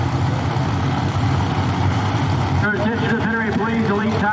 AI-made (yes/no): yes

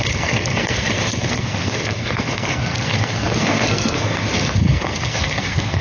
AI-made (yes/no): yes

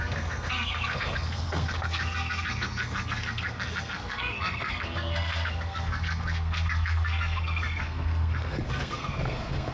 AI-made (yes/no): yes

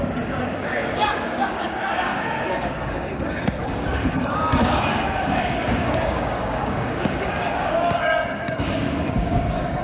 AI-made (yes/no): yes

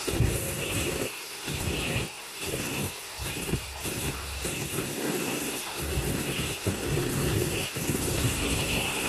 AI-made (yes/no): yes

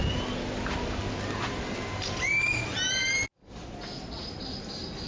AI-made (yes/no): no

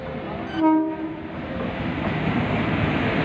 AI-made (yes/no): no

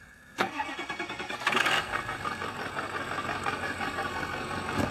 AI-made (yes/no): yes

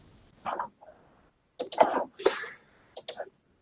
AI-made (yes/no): no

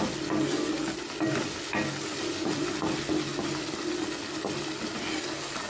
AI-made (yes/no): no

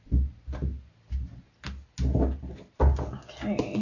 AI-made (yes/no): no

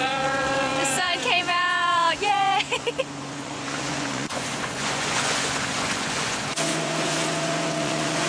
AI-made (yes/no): yes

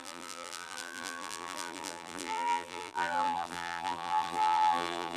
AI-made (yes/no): yes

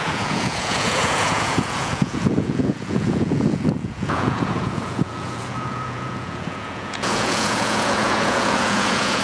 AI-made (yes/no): yes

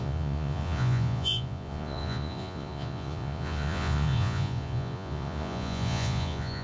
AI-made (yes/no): yes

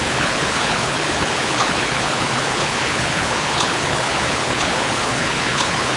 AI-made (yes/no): yes